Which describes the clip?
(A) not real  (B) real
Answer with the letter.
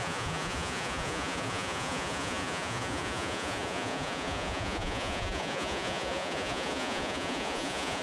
A